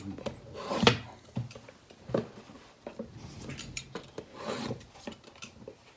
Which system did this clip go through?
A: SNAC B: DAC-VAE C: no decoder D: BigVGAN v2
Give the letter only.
C